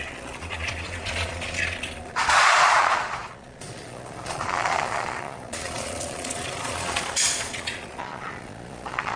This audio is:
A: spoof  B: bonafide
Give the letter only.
A